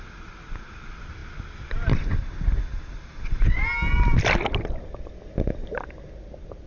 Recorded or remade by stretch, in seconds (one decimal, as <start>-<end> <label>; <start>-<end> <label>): 0.0-6.7 recorded